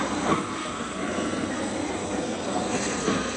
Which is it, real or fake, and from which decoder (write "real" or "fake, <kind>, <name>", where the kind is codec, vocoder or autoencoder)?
fake, codec, SNAC